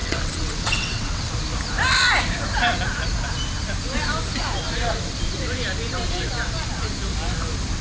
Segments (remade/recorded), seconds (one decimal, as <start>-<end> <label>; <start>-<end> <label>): 0.0-1.3 remade; 1.3-7.8 recorded